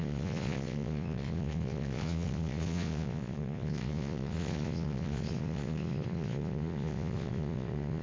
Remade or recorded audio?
remade